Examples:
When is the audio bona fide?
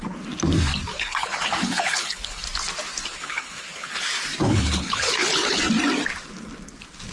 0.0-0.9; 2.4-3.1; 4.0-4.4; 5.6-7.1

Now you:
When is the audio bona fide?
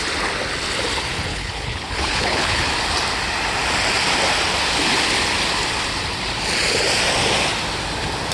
0.0-1.3; 2.7-8.3